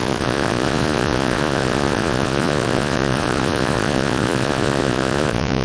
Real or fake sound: fake